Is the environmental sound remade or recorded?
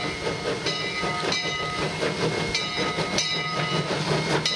recorded